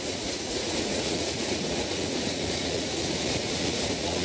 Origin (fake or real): fake